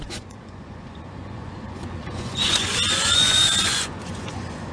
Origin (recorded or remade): remade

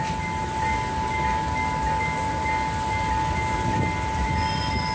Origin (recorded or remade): recorded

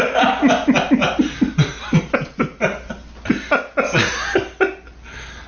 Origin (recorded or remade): recorded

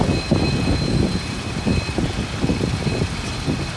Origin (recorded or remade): recorded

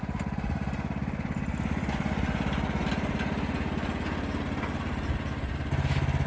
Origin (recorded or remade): recorded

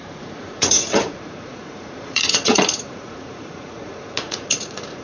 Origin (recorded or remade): remade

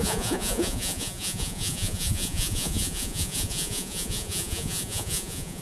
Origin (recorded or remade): remade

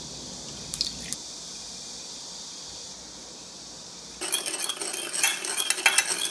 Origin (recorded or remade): recorded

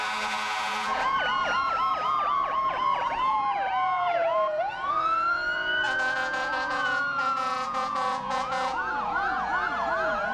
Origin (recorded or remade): remade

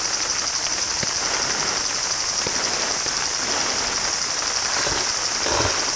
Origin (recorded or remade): recorded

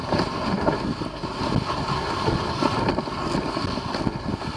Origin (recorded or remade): recorded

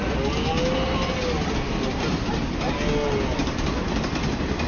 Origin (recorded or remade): recorded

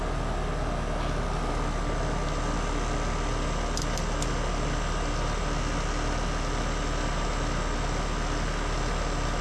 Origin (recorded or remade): recorded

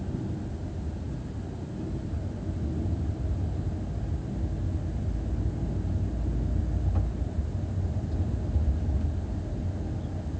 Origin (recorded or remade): recorded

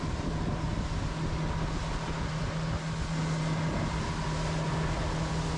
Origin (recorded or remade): recorded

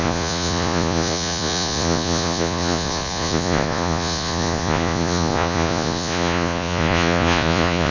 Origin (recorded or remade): remade